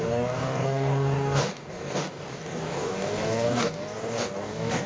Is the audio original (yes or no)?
no